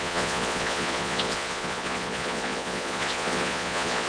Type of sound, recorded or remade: remade